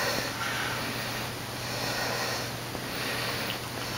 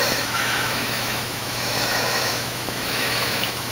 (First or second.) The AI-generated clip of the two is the second